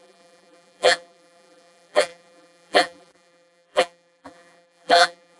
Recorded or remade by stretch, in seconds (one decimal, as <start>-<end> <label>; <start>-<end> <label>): 0.0-5.4 remade